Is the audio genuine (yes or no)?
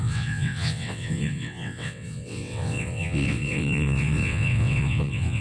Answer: no